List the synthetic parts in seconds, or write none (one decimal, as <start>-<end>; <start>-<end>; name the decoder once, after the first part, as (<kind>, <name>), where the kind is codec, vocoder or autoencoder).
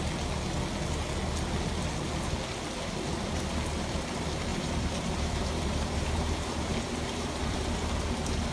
4.5-7.6 (vocoder, BigVGAN v2)